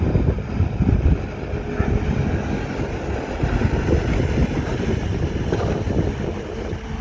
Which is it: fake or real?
real